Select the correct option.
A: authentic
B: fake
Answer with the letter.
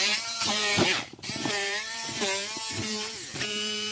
B